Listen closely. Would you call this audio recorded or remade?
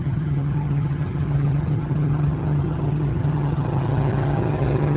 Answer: remade